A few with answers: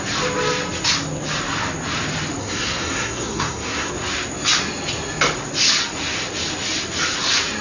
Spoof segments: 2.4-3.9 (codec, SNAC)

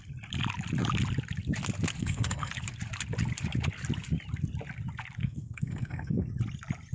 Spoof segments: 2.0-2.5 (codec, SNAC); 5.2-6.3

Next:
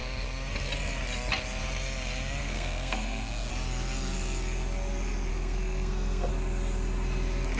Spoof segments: 2.4-3.5 (codec, SNAC); 5.3-6.3

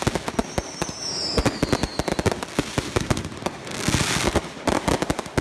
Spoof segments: none

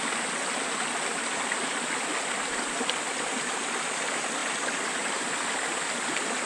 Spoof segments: none

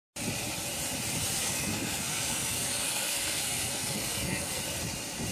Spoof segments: 1.4-4.6 (codec, SNAC)